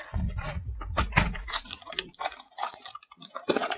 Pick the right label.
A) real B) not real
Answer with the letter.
B